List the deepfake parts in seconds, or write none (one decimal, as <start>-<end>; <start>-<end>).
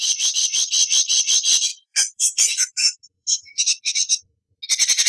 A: 1.7-4.6